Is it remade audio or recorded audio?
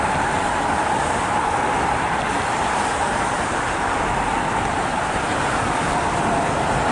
remade